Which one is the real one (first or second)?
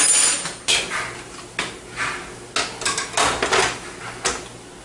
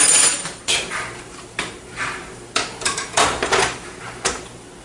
first